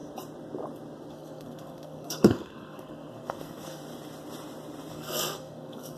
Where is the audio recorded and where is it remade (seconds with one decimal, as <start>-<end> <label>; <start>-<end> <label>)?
0.0-1.1 recorded; 1.1-3.8 remade; 3.8-4.9 recorded; 4.9-6.0 remade